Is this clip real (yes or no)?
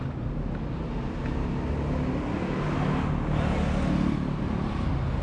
yes